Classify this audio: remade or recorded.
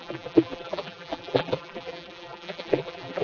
remade